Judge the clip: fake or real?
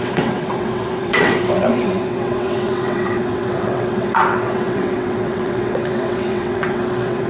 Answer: fake